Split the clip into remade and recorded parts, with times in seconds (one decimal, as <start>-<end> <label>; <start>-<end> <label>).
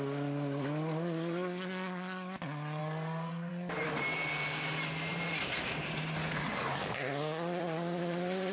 0.0-2.8 recorded; 2.8-3.5 remade; 3.5-8.5 recorded